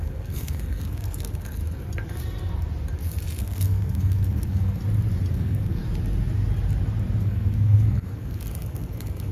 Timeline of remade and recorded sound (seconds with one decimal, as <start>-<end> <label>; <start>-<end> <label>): 0.0-1.6 remade; 1.6-3.4 recorded; 3.4-4.8 remade; 4.8-5.3 recorded; 5.3-5.8 remade; 5.8-7.2 recorded; 7.2-9.3 remade

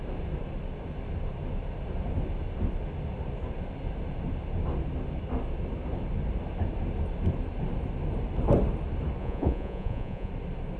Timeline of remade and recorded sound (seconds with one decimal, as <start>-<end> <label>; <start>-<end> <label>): 0.0-9.2 recorded; 9.2-10.3 remade; 10.3-10.8 recorded

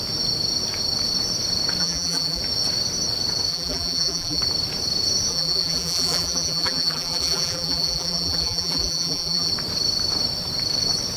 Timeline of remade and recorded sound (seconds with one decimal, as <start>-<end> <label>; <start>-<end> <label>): 0.0-1.8 recorded; 1.8-2.4 remade; 2.4-3.5 recorded; 3.5-4.4 remade; 4.4-5.3 recorded; 5.3-9.5 remade; 9.5-11.2 recorded